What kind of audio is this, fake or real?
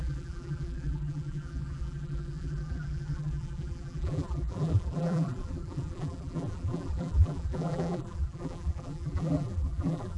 fake